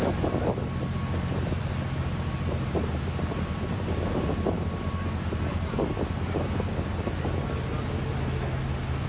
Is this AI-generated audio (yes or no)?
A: no